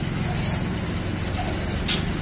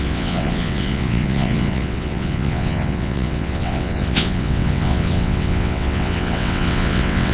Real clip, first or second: first